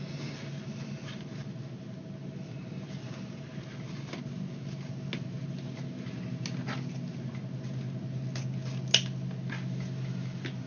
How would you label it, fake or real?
real